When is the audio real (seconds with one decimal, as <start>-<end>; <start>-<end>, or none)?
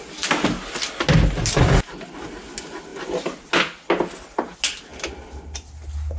0.0-6.2